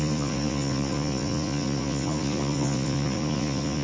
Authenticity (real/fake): fake